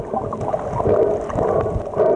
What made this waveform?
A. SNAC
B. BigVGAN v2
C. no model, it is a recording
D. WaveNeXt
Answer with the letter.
C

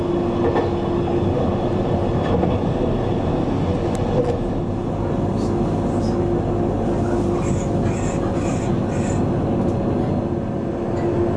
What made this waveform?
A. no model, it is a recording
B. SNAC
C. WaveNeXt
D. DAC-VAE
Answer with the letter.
A